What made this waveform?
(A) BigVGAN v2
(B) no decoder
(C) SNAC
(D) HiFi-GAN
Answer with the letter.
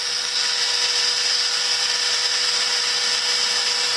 B